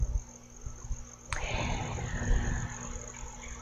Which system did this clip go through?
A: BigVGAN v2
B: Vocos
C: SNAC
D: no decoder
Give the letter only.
D